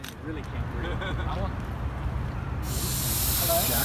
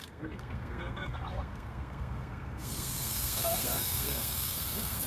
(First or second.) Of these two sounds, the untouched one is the first